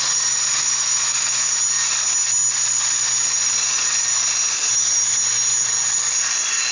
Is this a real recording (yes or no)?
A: yes